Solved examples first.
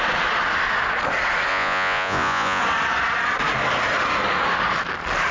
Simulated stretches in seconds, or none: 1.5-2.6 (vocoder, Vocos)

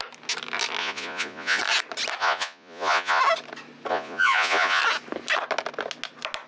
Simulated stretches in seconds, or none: 0.8-1.6 (vocoder, Vocos); 2.2-3.2; 3.9-4.8

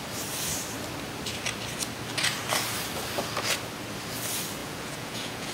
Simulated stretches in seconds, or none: 4.6-5.5 (vocoder, Vocos)

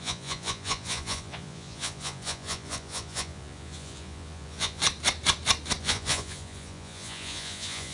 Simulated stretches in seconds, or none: 0.0-4.8 (vocoder, Vocos); 5.8-7.9

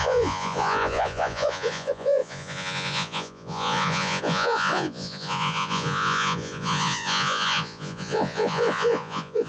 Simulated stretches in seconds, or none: 0.0-9.5 (vocoder, Vocos)

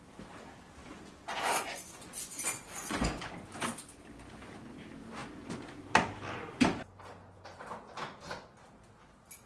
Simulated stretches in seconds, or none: 0.8-3.3 (vocoder, Vocos)

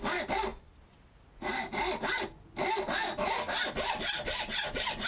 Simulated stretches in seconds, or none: none

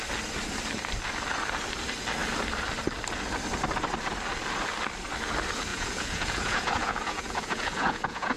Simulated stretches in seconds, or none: 5.7-8.4 (vocoder, Vocos)